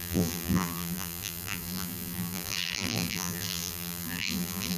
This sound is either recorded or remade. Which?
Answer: remade